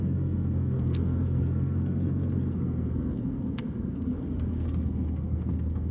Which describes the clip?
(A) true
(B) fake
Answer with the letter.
B